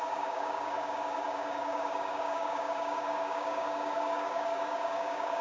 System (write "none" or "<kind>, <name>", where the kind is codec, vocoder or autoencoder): codec, DAC